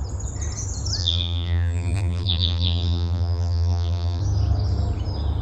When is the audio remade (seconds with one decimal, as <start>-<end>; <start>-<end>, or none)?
1.0-4.2